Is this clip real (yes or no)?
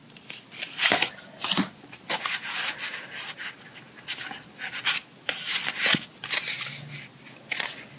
yes